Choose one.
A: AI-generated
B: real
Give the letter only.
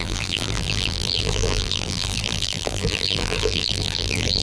A